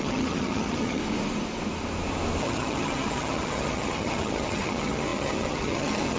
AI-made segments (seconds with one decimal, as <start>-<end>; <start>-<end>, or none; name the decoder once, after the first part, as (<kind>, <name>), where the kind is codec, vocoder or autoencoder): 0.0-1.0 (vocoder, HiFi-GAN); 2.4-6.2